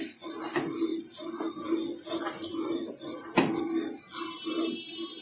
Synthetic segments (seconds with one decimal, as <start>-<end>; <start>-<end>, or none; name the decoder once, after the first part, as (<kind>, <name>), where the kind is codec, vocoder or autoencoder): none